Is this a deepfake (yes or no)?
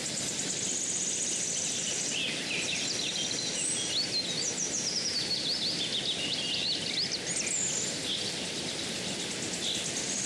no